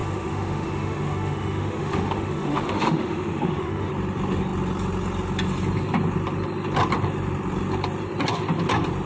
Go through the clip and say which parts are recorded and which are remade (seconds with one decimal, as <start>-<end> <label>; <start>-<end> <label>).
0.0-3.9 remade; 3.9-9.1 recorded